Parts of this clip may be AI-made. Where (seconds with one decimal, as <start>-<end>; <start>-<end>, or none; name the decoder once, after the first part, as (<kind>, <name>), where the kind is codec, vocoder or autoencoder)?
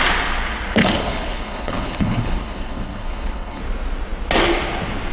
0.8-3.6 (codec, HILCodec)